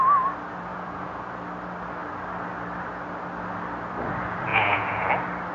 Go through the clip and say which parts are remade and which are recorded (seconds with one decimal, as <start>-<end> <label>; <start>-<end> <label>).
0.0-0.7 recorded; 0.7-1.3 remade; 1.3-4.5 recorded; 4.5-5.1 remade; 5.1-5.5 recorded